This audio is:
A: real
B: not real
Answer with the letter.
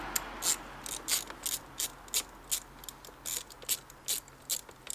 A